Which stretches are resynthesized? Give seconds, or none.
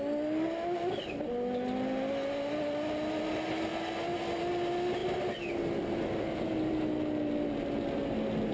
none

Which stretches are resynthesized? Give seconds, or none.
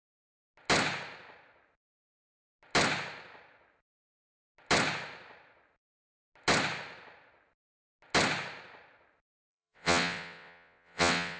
9.4-11.4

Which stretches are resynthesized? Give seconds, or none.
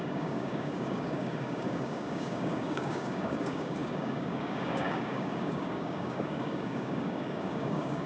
0.0-8.1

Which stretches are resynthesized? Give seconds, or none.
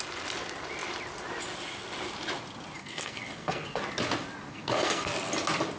2.8-3.8; 4.5-5.1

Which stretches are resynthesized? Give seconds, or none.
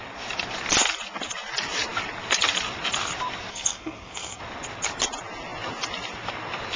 3.5-4.4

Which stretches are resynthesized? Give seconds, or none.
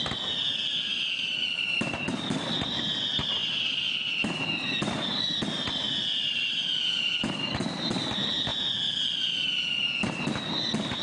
none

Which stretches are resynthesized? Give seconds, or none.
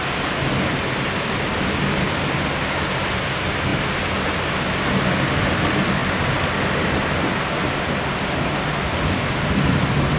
none